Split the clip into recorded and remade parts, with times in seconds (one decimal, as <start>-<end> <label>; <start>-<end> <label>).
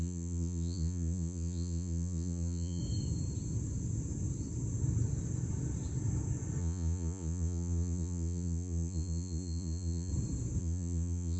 0.0-2.8 remade; 2.8-6.6 recorded; 6.6-10.1 remade; 10.1-10.6 recorded; 10.6-11.4 remade